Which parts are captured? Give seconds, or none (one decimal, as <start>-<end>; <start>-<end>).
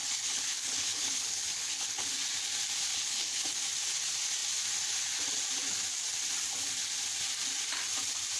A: 2.1-2.9; 3.6-8.4